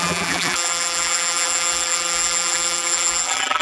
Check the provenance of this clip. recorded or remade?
remade